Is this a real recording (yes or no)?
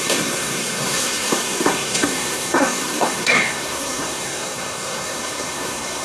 no